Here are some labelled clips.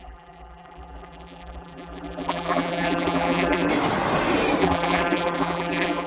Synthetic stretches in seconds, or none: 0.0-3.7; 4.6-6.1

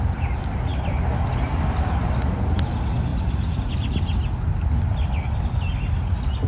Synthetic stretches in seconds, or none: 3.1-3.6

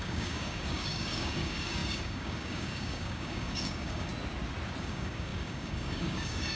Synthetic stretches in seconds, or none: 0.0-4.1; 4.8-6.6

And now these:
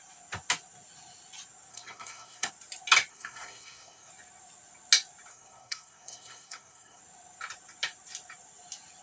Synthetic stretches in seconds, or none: 1.7-2.5; 3.1-4.1; 5.3-7.0

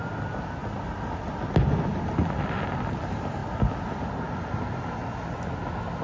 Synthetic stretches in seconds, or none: 0.6-1.3

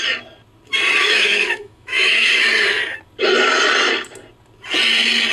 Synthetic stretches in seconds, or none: 1.0-2.3

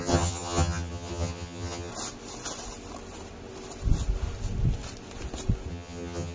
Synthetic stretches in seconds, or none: 0.0-1.9; 5.7-6.3